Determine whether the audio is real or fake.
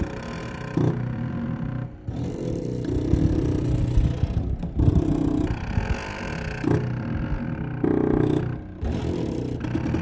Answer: real